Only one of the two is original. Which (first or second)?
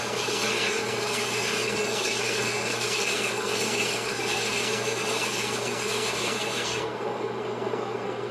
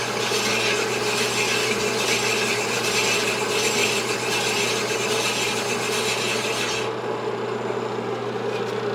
second